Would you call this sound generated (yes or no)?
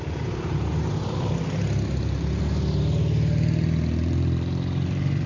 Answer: no